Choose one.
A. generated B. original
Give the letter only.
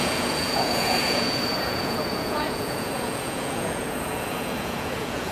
A